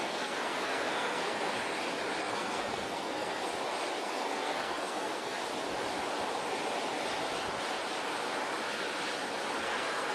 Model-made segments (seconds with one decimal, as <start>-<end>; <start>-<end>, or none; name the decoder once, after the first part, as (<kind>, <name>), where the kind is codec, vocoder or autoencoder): 0.0-1.5 (codec, SNAC); 2.2-3.5; 4.0-5.4; 9.6-10.1